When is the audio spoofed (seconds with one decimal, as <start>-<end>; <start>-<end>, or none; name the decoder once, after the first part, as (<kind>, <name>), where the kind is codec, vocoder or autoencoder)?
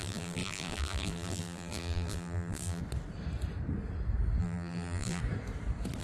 0.0-2.8 (vocoder, BigVGAN v2); 4.4-5.2